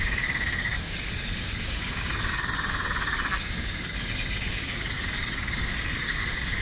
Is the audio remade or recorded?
remade